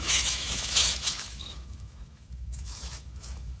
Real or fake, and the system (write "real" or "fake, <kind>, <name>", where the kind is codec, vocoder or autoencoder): fake, autoencoder, DAC-VAE